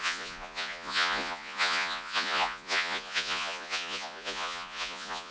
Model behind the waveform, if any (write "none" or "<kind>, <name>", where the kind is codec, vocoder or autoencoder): vocoder, Vocos